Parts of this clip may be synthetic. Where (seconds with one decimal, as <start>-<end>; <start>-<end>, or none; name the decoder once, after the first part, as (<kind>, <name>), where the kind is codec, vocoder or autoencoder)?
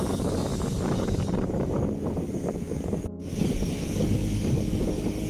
0.0-5.3 (codec, DAC)